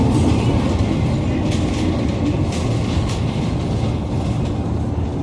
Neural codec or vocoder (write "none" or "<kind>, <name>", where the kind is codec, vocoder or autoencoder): none